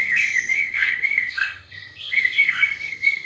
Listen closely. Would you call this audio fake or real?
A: fake